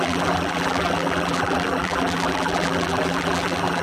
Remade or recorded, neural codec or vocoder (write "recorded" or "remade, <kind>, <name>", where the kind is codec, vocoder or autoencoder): remade, vocoder, BigVGAN v2